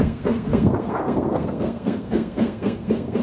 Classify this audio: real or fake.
fake